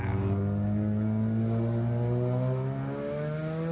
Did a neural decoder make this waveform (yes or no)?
no